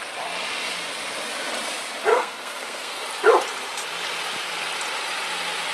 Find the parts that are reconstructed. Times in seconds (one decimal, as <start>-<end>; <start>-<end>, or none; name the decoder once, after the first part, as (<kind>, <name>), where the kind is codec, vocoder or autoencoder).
2.1-3.0 (codec, SNAC)